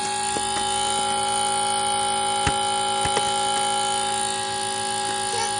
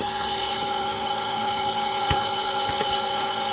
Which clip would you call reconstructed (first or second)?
second